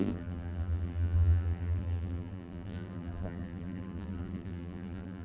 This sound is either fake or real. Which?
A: fake